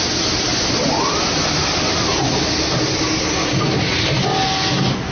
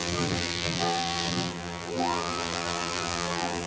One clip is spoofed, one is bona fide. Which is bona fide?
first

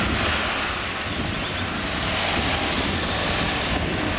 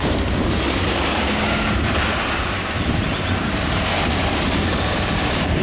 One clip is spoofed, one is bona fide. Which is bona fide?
first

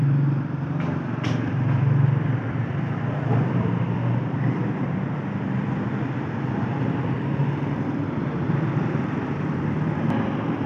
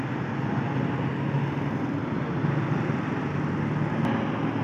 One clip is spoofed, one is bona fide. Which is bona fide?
second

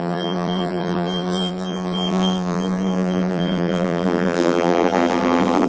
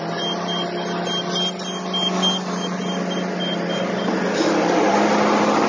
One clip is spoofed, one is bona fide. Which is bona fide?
second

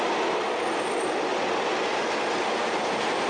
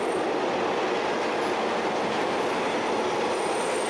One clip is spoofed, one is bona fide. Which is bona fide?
second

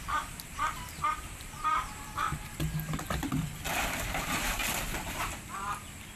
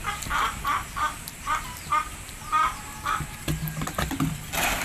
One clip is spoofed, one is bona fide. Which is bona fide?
second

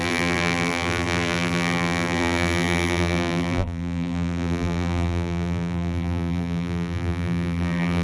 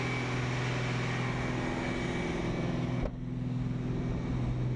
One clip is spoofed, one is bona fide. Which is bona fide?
second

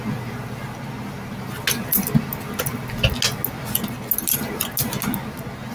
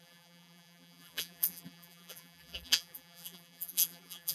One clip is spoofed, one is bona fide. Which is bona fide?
first